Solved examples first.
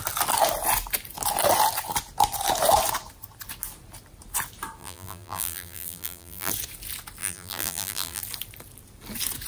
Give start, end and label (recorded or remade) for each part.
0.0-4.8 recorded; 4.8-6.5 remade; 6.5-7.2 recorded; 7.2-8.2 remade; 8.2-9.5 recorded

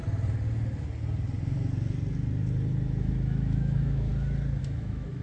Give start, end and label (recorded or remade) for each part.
0.0-3.1 recorded; 3.1-4.1 remade; 4.1-4.6 recorded; 4.6-5.2 remade

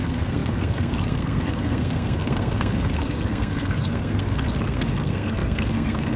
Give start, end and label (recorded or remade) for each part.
0.0-6.2 remade

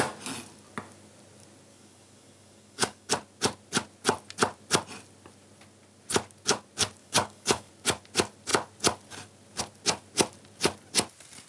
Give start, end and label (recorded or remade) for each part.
0.0-1.7 recorded; 1.7-3.1 remade; 3.1-7.0 recorded; 7.0-7.7 remade; 7.7-11.5 recorded

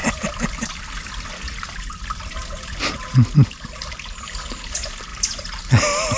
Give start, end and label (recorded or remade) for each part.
0.0-6.2 recorded